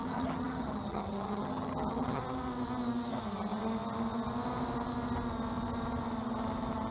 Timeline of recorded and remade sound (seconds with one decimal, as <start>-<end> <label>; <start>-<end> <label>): 0.0-2.2 remade; 2.2-6.9 recorded